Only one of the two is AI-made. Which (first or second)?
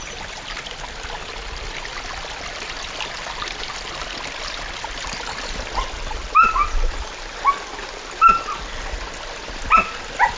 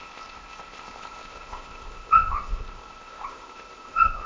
second